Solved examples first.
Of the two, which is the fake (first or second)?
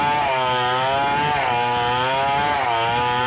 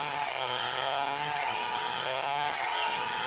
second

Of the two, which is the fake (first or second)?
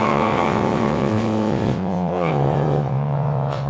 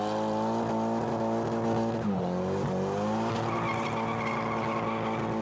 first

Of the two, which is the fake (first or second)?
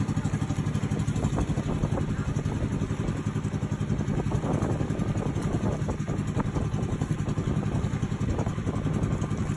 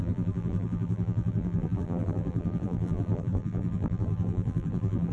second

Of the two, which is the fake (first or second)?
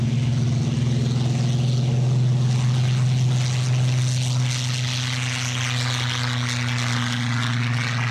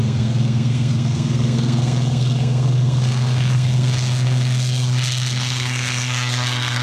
second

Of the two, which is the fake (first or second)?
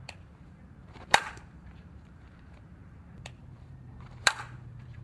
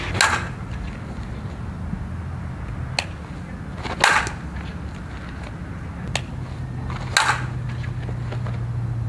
first